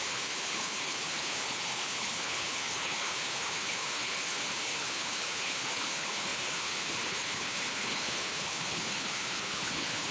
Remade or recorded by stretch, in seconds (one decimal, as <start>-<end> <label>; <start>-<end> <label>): 0.0-10.1 remade